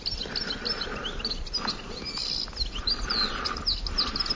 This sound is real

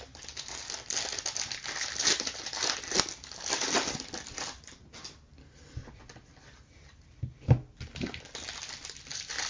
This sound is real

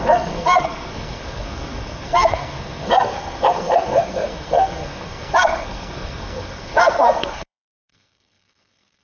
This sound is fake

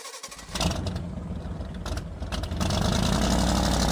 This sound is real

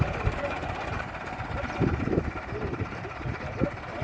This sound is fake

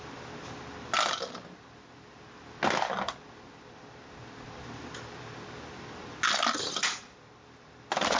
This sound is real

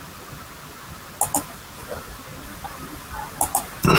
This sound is real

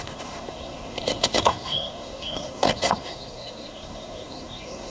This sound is fake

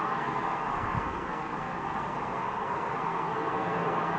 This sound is fake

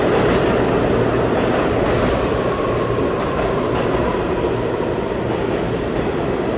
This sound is real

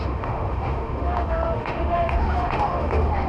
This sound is fake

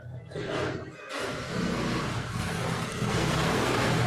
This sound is fake